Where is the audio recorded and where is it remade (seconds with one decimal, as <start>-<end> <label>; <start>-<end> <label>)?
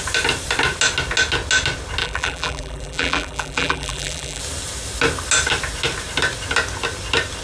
0.0-2.0 recorded; 2.0-4.4 remade; 4.4-7.4 recorded